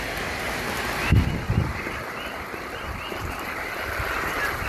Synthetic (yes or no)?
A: no